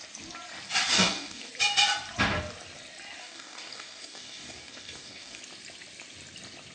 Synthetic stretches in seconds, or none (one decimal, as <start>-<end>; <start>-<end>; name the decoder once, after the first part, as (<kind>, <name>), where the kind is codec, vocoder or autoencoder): 0.9-1.5 (codec, DAC); 3.2-5.4